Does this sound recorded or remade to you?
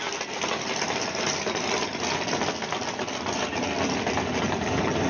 recorded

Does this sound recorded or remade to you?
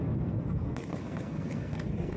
remade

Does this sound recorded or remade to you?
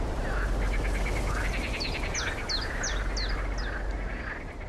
recorded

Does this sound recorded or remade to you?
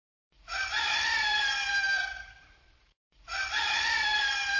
remade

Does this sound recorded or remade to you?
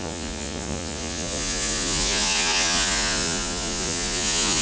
remade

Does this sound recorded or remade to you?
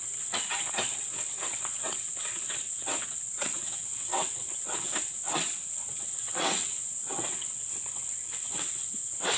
remade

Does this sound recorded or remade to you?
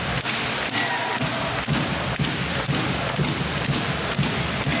recorded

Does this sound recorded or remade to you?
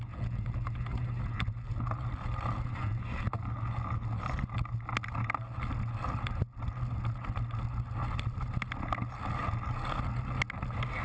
recorded